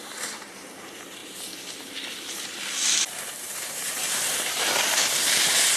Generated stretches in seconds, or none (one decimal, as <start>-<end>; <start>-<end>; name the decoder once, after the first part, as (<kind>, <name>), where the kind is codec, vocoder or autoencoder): 0.0-1.2 (vocoder, BigVGAN v2); 4.4-5.8